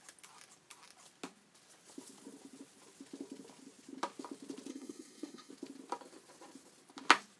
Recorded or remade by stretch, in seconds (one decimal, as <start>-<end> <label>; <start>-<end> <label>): 0.0-4.7 recorded; 4.7-5.5 remade; 5.5-7.4 recorded